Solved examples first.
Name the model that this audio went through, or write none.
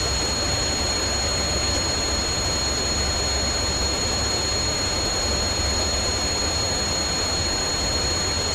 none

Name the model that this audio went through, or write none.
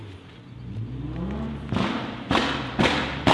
none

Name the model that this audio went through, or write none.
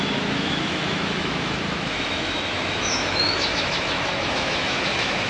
autoencoder, DAC-VAE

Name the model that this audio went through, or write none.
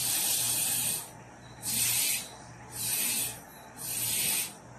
vocoder, BigVGAN v2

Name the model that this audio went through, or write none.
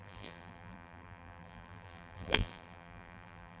vocoder, BigVGAN v2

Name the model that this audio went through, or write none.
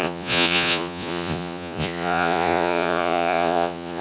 vocoder, Vocos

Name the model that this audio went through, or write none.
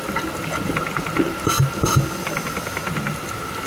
none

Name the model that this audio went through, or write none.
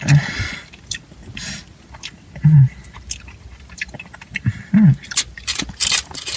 none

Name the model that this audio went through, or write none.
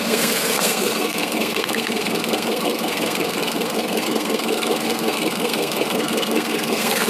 codec, SNAC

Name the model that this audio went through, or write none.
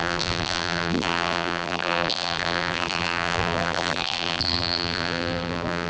vocoder, BigVGAN v2